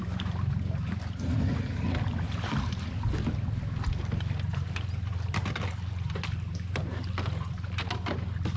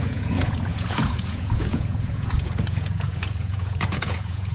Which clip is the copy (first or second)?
second